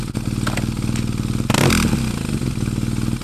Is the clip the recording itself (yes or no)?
yes